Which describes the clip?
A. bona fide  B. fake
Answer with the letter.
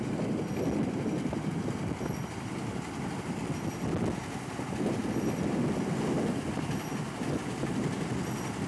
A